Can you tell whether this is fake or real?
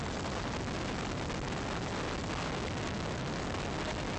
real